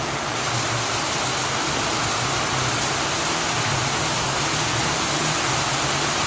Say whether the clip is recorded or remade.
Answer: recorded